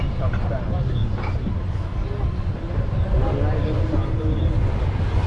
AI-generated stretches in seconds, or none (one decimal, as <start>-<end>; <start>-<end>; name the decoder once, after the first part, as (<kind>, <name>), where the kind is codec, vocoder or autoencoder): none